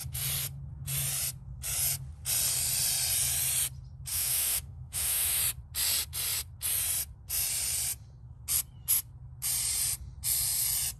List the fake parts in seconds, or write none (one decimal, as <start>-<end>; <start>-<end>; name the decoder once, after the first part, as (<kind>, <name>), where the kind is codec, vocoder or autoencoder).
4.1-5.4 (autoencoder, DAC-VAE)